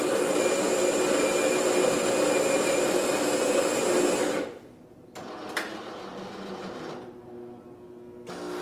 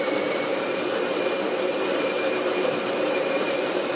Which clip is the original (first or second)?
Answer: first